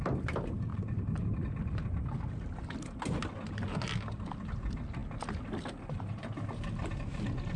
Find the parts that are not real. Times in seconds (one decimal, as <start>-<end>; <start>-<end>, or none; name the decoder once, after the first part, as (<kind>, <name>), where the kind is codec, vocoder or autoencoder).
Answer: none